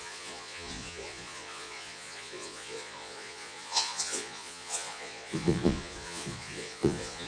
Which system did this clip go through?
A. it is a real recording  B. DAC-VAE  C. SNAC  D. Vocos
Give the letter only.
D